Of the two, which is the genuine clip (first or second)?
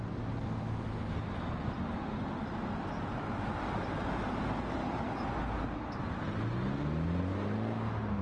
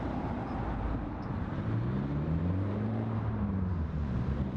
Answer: first